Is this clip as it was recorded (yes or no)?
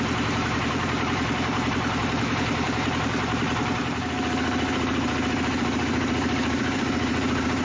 no